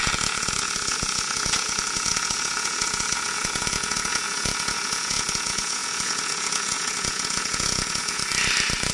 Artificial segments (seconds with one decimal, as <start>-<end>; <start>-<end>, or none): 0.0-8.2